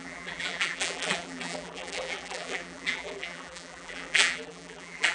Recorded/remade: remade